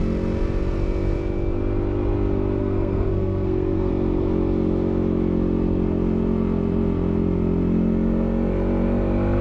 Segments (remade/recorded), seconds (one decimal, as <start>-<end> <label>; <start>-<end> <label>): 0.0-2.6 recorded; 2.6-3.9 remade; 3.9-9.4 recorded